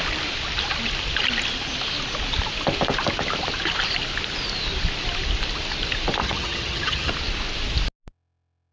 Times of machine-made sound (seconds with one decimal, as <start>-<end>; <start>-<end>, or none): 6.2-7.1